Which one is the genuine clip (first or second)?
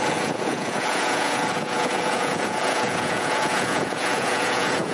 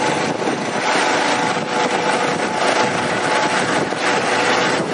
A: second